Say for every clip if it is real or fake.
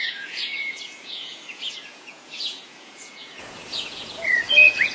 fake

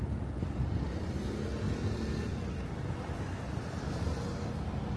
real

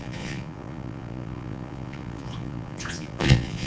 fake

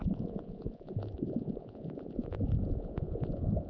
fake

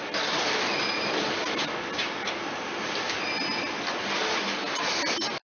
real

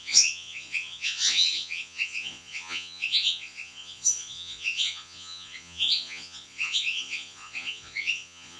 fake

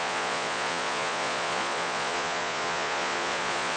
fake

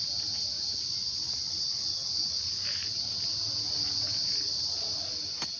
real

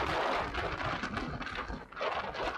real